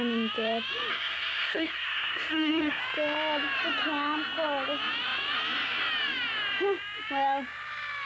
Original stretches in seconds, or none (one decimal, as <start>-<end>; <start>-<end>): 0.0-0.9; 2.8-8.1